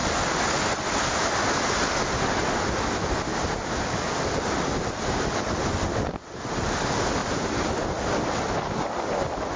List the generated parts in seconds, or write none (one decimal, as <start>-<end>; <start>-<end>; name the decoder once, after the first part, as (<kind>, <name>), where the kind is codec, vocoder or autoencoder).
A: none